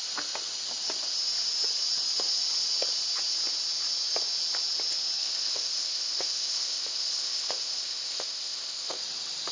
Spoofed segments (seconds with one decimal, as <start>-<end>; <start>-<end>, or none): 5.2-9.0